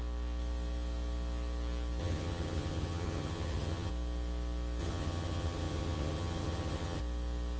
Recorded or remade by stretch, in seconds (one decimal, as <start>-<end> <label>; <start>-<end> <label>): 0.0-2.0 recorded; 2.0-3.9 remade; 3.9-4.8 recorded; 4.8-7.0 remade; 7.0-7.6 recorded